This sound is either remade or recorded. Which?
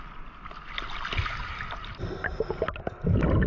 recorded